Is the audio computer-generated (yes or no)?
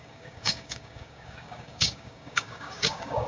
yes